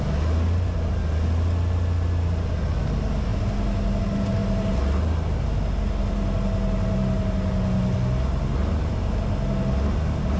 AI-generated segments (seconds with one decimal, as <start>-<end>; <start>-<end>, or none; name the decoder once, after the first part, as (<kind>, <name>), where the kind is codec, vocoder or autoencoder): none